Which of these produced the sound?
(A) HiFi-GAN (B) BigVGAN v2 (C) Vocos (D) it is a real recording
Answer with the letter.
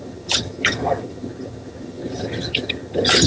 A